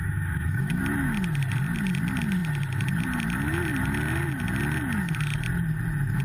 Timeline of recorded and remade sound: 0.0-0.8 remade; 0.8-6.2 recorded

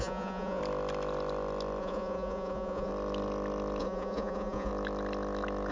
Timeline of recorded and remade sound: 0.0-0.6 remade; 0.6-1.8 recorded; 1.8-2.9 remade; 2.9-3.8 recorded; 3.8-4.7 remade; 4.7-5.7 recorded